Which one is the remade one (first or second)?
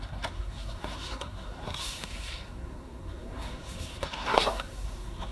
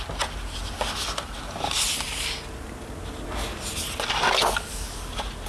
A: first